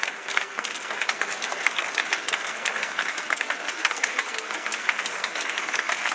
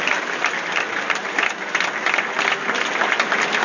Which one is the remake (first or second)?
first